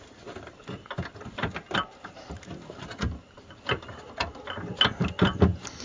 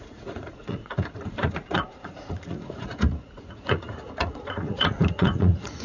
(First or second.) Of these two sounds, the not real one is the second